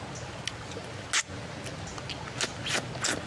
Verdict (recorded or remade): recorded